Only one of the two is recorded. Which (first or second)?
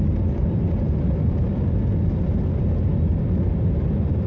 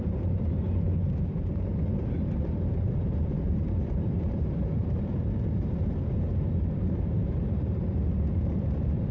first